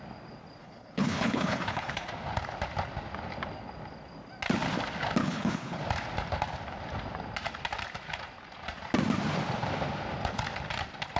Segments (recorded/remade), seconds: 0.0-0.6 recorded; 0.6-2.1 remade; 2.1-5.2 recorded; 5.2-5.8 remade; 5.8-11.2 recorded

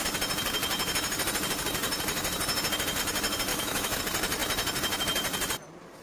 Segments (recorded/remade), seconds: 0.0-3.5 recorded; 3.5-4.0 remade; 4.0-6.0 recorded